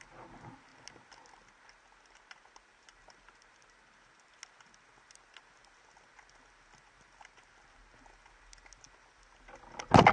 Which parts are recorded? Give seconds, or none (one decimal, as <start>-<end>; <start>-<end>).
0.0-10.1